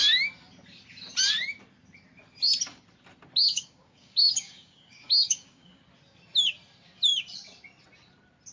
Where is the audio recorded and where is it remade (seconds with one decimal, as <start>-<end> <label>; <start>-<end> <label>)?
0.0-3.5 recorded; 3.5-5.8 remade; 5.8-8.5 recorded